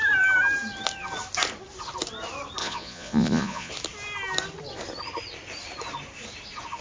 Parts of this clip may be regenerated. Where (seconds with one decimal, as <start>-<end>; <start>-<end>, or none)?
2.6-3.7